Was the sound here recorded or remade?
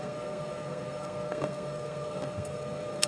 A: remade